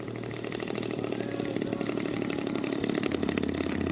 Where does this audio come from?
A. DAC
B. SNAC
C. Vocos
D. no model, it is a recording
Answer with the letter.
D